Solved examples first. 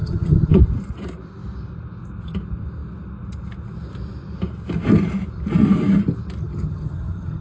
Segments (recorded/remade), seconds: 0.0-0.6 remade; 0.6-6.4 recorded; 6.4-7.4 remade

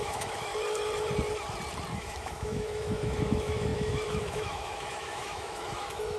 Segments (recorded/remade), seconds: 0.0-0.5 remade; 0.5-2.0 recorded; 2.0-6.2 remade

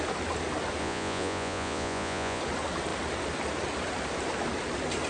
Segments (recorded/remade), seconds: 0.0-0.8 recorded; 0.8-2.4 remade; 2.4-5.1 recorded

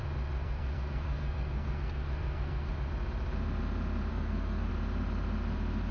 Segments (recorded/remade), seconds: 0.0-0.4 recorded; 0.4-2.7 remade; 2.7-4.1 recorded; 4.1-4.7 remade; 4.7-5.9 recorded